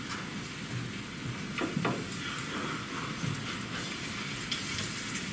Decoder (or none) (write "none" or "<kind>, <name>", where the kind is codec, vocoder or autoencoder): none